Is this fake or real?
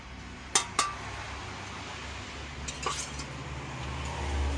real